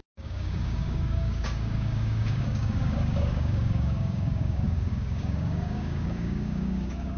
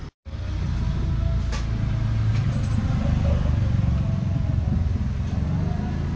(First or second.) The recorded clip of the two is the second